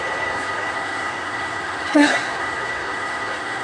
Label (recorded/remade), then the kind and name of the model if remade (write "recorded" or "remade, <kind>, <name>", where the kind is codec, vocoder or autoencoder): remade, codec, SNAC